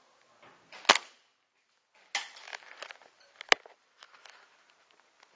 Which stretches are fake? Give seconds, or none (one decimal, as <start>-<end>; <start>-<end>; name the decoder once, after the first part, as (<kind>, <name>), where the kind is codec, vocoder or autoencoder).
none